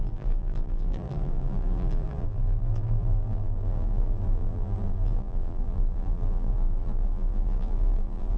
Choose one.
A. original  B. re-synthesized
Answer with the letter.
B